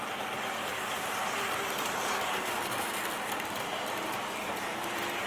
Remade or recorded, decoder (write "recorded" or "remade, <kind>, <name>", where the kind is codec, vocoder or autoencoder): recorded